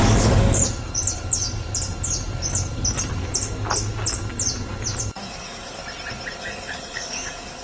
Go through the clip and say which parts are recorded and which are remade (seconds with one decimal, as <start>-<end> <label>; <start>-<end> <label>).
0.0-0.6 remade; 0.6-5.2 recorded; 5.2-5.8 remade; 5.8-6.4 recorded; 6.4-7.6 remade